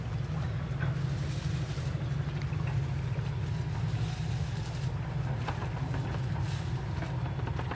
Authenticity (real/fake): real